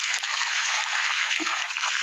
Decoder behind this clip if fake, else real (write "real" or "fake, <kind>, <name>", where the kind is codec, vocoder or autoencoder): fake, codec, SNAC